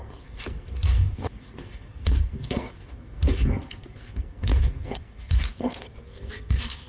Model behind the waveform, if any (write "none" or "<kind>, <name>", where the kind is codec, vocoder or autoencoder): codec, SNAC